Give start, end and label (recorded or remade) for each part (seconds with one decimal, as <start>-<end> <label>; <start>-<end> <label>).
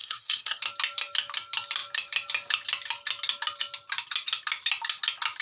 0.0-0.6 remade; 0.6-5.4 recorded